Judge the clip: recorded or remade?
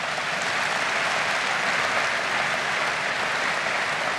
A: recorded